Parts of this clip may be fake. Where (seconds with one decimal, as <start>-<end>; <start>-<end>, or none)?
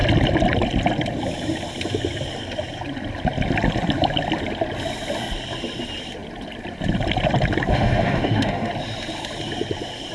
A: 7.7-8.7